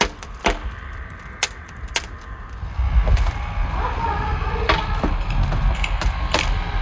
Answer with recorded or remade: recorded